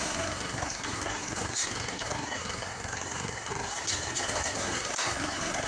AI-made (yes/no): yes